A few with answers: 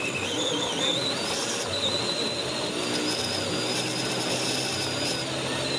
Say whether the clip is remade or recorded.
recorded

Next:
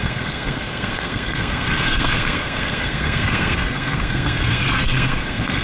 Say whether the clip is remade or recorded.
remade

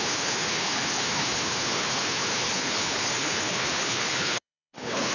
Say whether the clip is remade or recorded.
remade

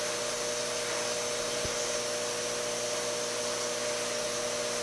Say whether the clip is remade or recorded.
recorded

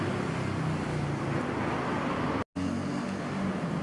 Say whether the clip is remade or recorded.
recorded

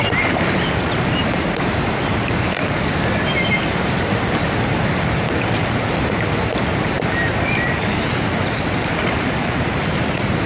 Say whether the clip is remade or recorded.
remade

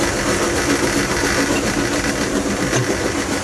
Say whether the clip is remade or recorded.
recorded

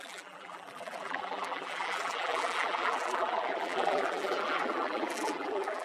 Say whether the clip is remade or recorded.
remade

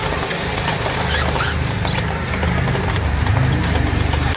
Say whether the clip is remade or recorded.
remade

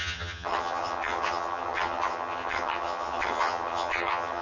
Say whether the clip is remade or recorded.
remade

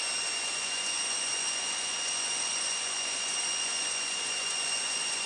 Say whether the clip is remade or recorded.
remade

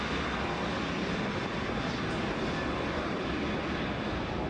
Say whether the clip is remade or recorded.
recorded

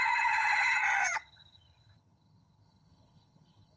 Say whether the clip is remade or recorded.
remade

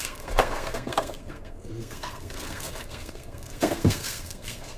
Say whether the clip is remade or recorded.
remade